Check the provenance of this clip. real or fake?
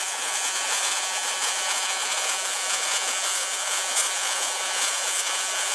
fake